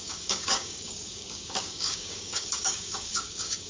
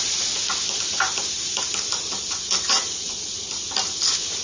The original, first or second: second